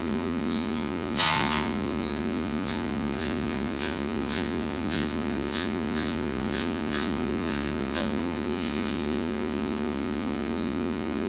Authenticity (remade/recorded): remade